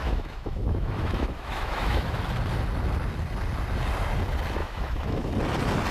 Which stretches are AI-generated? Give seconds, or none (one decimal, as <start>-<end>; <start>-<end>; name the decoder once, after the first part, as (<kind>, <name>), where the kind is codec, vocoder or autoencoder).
0.0-2.2 (autoencoder, DAC-VAE); 4.6-5.3

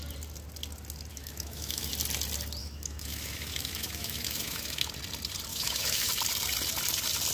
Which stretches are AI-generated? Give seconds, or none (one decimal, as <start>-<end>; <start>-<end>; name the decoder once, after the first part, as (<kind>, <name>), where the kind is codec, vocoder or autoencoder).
1.1-1.9 (autoencoder, DAC-VAE); 2.6-4.9; 5.5-6.1

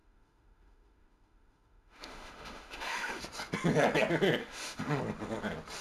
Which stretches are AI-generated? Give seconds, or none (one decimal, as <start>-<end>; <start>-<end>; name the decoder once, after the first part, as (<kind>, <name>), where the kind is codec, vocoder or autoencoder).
0.0-3.2 (autoencoder, DAC-VAE); 4.4-5.0

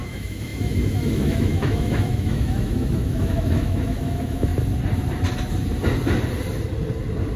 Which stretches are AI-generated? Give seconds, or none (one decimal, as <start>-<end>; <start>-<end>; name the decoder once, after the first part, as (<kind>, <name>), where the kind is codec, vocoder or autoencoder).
0.0-4.5 (autoencoder, DAC-VAE)